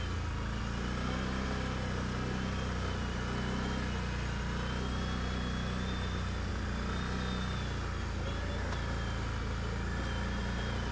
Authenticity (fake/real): real